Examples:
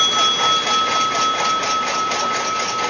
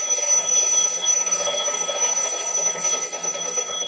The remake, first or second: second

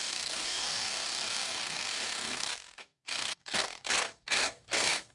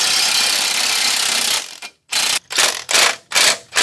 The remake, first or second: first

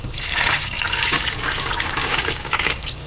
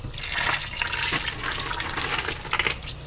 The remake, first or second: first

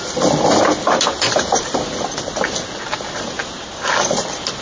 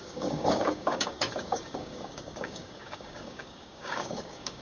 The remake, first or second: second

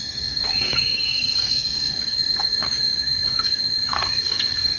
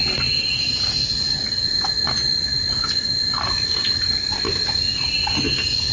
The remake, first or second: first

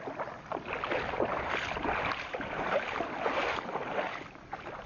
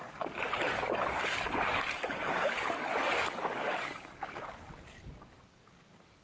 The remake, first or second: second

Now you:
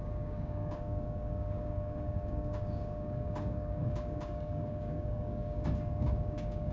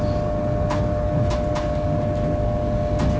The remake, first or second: first